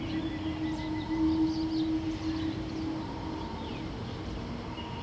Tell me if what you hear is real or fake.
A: real